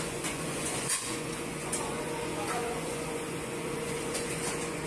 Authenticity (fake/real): fake